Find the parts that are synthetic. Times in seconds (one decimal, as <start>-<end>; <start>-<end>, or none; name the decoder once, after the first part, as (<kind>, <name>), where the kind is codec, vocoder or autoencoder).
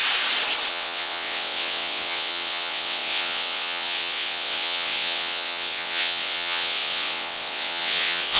0.7-8.4 (vocoder, WaveNeXt)